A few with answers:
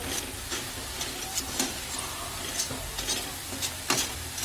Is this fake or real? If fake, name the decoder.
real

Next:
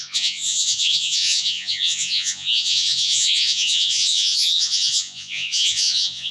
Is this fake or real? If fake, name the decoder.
fake, vocoder, Vocos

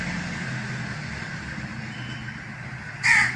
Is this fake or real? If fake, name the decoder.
real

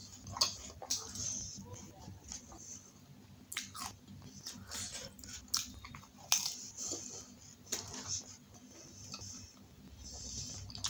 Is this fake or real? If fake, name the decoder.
real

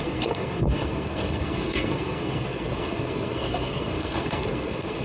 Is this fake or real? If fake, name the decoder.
fake, codec, SNAC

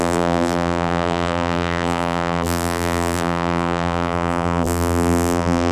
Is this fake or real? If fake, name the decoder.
fake, vocoder, BigVGAN v2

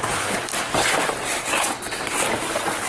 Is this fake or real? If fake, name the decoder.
real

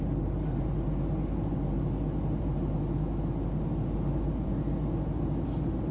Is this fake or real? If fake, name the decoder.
real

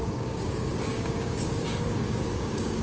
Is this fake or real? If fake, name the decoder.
fake, codec, DAC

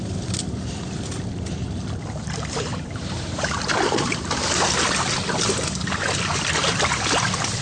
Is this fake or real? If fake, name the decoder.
fake, vocoder, BigVGAN v2